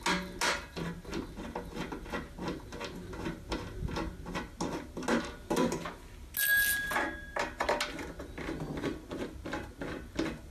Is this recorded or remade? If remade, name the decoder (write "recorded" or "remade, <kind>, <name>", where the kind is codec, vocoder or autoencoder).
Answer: recorded